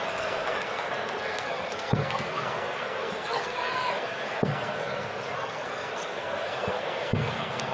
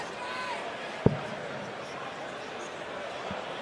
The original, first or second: second